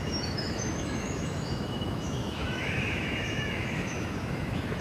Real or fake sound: fake